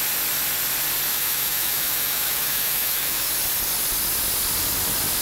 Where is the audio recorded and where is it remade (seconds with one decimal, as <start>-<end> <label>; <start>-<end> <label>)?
0.0-1.1 recorded; 1.1-3.3 remade; 3.3-5.2 recorded